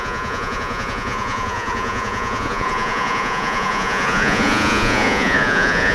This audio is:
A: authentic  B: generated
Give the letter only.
B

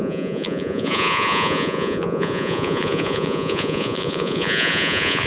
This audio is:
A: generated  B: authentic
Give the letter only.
A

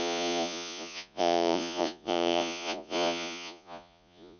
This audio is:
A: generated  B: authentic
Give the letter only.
A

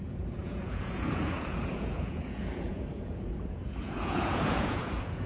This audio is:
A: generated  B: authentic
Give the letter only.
A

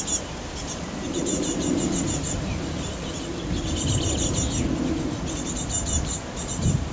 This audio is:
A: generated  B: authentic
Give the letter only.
B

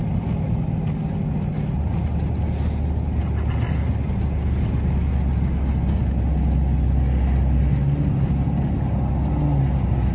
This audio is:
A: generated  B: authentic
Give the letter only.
B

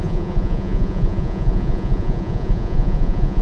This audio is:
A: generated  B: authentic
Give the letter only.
A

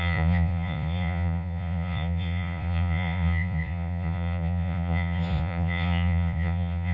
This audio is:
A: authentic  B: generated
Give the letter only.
B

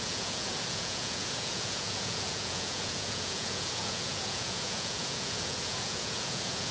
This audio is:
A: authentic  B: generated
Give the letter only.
B